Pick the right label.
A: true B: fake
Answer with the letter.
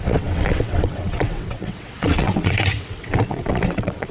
B